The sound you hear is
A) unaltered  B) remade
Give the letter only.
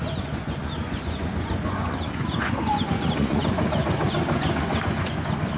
B